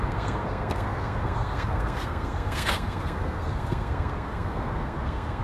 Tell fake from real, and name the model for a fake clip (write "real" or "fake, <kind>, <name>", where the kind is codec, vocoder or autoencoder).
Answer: fake, codec, SNAC